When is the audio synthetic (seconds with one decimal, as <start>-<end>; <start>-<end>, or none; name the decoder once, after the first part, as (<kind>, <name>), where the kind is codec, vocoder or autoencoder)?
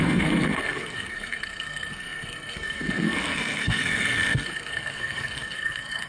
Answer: 0.0-6.1 (codec, SNAC)